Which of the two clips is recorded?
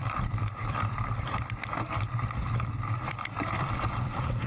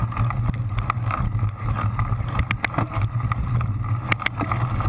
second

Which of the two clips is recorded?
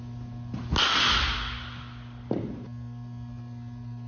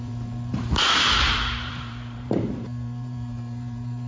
first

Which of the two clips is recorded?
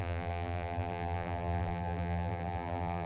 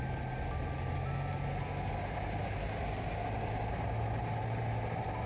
second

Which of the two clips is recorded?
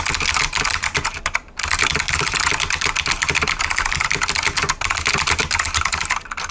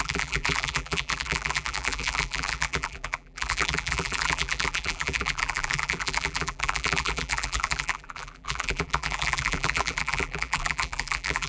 first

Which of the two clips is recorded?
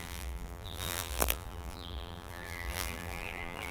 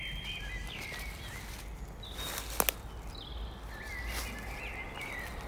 second